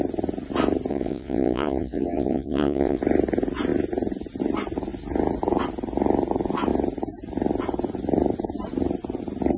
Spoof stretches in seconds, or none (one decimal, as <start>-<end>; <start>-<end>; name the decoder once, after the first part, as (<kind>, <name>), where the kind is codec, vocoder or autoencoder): 0.9-3.0 (vocoder, WaveNeXt)